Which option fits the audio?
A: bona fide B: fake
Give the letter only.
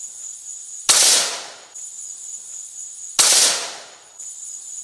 A